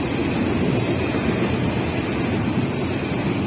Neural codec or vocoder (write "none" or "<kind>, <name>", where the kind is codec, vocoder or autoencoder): none